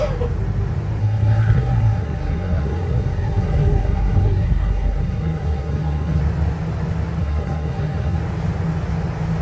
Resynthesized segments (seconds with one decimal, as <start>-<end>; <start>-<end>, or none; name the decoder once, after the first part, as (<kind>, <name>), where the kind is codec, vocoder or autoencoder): 1.0-6.2 (codec, SNAC); 7.2-8.2